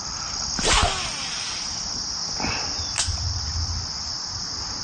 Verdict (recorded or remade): recorded